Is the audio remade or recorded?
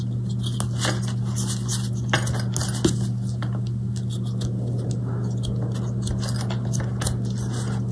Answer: recorded